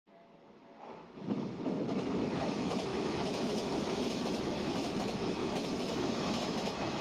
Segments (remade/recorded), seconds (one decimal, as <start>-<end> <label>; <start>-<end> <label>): 0.0-7.0 remade